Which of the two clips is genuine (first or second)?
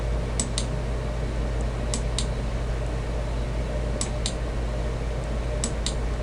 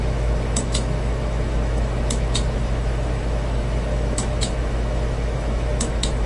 first